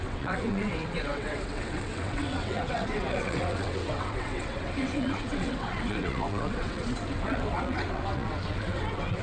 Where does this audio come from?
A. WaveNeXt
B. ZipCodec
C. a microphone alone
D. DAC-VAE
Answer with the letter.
A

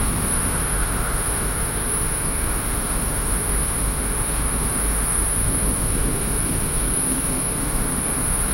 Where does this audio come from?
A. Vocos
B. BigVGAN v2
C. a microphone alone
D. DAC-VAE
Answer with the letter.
D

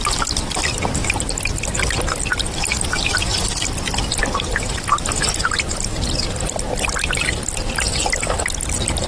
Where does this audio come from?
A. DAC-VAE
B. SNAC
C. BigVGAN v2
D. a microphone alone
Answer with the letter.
D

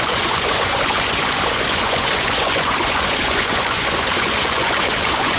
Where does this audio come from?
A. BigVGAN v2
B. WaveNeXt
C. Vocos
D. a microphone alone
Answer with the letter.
C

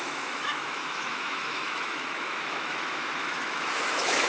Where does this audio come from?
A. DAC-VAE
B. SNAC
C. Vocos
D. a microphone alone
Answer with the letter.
A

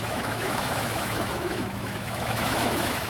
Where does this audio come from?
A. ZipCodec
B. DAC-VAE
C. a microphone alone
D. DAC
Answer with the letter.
B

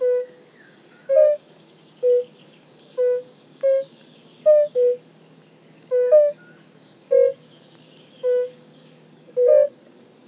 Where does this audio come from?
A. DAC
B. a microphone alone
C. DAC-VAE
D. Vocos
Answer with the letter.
A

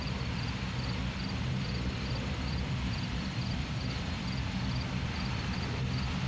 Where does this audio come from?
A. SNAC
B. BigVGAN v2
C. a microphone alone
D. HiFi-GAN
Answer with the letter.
B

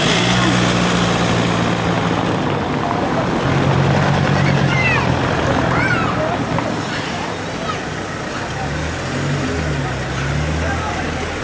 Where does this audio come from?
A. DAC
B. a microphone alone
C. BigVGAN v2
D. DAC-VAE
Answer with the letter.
B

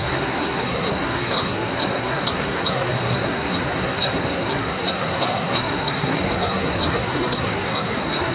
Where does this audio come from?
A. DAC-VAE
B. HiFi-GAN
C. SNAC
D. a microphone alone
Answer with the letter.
C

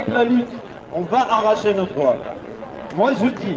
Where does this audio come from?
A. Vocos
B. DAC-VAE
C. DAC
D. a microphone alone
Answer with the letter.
A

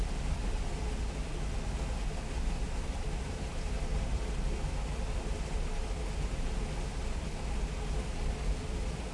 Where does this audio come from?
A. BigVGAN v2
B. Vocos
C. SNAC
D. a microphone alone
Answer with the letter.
D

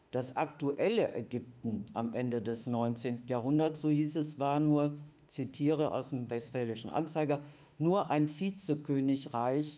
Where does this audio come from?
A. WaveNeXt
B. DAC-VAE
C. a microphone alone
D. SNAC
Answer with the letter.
B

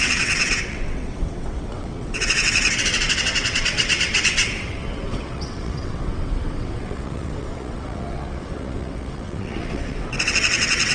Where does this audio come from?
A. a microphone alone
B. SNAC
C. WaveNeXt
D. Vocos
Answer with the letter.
C